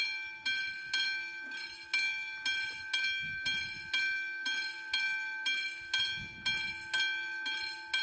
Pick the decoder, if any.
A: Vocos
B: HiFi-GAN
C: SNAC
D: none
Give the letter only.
D